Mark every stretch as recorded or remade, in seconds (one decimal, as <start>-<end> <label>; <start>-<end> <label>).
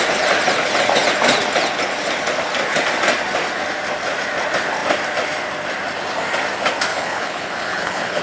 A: 0.0-6.9 recorded; 6.9-8.2 remade